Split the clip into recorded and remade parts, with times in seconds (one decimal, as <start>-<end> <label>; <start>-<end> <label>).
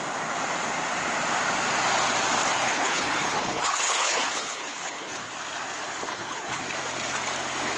0.0-2.5 recorded; 2.5-5.3 remade; 5.3-6.1 recorded; 6.1-6.6 remade; 6.6-7.8 recorded